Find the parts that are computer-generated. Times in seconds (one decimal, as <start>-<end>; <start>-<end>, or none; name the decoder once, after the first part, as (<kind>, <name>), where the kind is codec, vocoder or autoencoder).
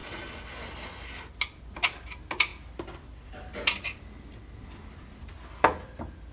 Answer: 2.5-3.5 (vocoder, BigVGAN v2)